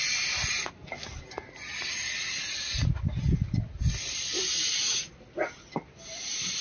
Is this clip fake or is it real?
real